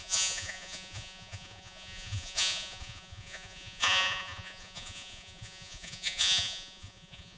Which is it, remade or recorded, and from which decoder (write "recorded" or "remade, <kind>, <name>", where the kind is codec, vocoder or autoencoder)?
remade, vocoder, Vocos